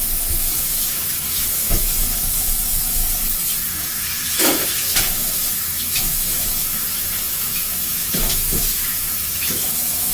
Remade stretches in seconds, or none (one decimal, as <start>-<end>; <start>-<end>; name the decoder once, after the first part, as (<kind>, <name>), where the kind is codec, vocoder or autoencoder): 0.0-3.0 (autoencoder, DAC-VAE); 3.7-10.1